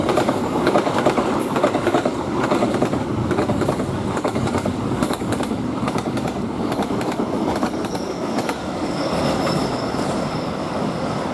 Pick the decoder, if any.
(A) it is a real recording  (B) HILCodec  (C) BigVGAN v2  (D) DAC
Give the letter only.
D